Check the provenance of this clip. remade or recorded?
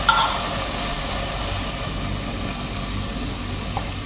recorded